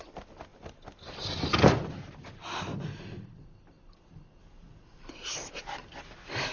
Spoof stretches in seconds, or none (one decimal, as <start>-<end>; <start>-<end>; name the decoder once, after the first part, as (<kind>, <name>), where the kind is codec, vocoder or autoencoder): none